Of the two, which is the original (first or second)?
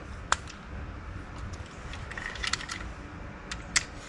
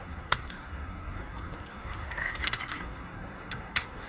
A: first